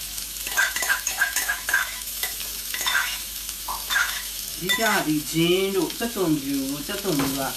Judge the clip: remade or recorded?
remade